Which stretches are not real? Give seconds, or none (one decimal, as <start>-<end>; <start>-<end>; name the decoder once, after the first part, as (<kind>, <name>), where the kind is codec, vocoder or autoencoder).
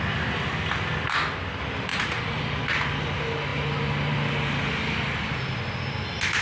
1.9-2.4 (vocoder, Vocos)